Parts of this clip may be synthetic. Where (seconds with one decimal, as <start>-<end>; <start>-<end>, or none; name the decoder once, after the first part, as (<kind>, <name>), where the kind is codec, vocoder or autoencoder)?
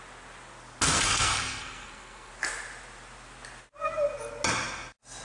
0.9-2.3 (codec, SNAC)